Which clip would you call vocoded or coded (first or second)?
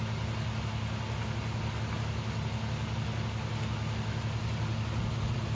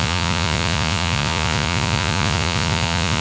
second